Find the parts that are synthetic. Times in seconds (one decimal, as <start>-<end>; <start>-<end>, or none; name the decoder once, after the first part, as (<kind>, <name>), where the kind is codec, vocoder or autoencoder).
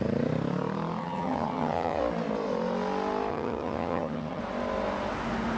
1.0-2.0 (vocoder, HiFi-GAN); 3.3-4.4